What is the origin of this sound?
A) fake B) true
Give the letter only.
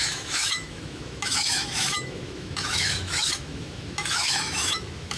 A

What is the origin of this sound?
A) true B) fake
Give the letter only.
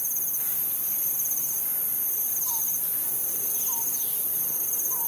A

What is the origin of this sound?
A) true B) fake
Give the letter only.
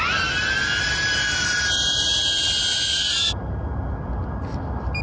A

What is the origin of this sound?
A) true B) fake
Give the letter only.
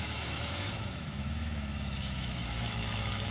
B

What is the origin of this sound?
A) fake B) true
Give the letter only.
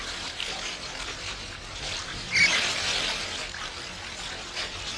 B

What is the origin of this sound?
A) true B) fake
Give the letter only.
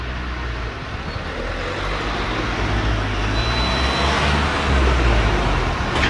A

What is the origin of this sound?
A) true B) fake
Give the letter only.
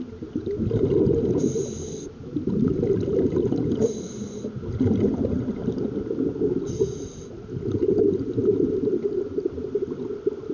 A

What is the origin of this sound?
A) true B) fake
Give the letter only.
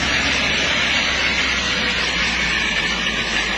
A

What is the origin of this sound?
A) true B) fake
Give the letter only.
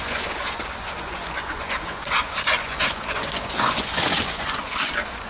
B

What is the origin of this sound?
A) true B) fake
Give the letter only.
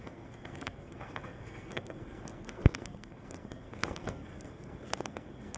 B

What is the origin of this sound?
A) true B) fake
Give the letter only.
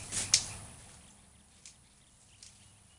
A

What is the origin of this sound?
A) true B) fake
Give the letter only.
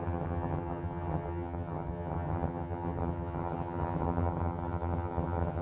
B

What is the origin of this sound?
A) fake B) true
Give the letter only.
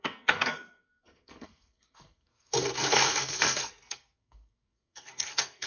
A